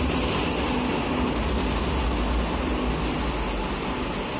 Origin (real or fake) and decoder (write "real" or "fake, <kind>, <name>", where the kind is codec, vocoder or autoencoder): real